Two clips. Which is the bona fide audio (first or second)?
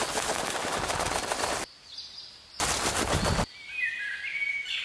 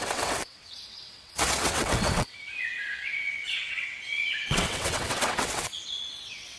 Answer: first